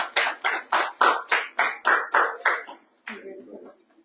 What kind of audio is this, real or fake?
real